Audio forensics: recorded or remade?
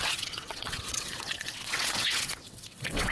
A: remade